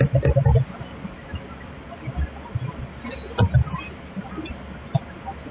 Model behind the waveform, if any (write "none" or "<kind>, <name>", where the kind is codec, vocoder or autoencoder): none